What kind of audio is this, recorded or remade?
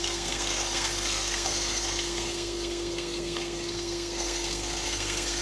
remade